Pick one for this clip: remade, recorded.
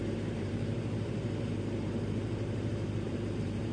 remade